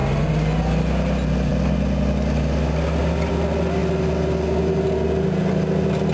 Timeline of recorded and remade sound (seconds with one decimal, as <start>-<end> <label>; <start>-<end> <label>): 0.0-6.1 recorded